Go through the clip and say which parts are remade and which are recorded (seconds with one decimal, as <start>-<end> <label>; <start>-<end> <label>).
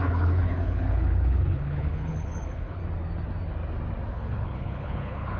0.0-2.8 remade; 2.8-4.1 recorded; 4.1-5.4 remade